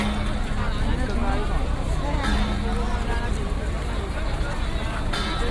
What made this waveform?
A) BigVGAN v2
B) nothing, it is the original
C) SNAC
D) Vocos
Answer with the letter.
B